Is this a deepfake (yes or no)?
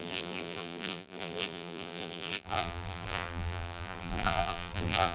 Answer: yes